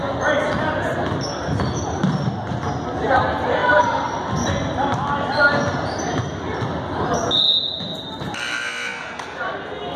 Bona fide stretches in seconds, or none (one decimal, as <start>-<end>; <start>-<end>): 0.0-10.0